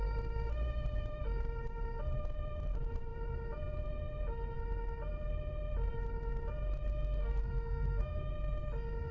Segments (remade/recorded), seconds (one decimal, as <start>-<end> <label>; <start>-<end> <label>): 0.0-6.9 recorded; 6.9-8.3 remade; 8.3-9.1 recorded